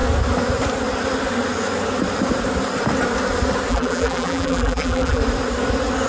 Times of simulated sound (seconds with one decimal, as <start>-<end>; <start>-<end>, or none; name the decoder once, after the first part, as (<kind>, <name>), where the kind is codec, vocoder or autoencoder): 3.7-5.2 (vocoder, BigVGAN v2)